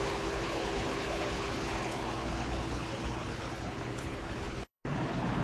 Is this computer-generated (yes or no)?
yes